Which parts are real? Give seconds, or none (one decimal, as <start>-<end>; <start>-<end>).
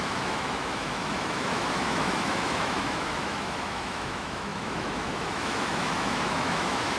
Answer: none